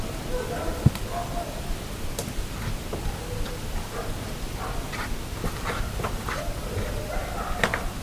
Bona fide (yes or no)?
yes